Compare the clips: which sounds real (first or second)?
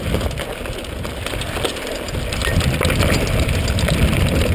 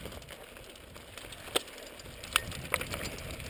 second